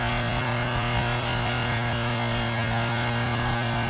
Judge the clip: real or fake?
real